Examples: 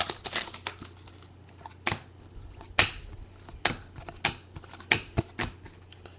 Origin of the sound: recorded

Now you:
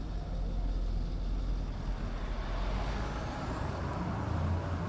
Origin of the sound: recorded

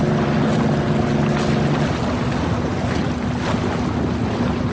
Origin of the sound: recorded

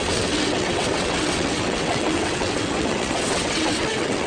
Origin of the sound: remade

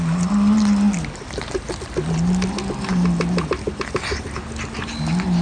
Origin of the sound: recorded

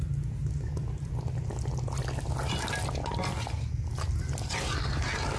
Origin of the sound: recorded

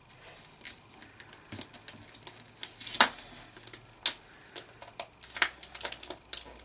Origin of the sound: recorded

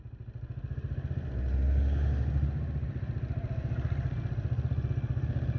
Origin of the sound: recorded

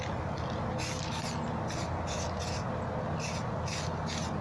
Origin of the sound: recorded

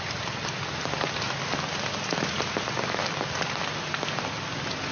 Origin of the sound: recorded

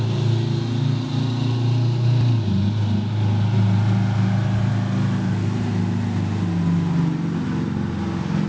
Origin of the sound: recorded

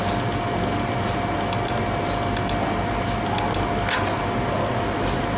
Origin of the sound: recorded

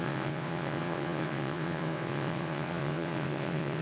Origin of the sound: remade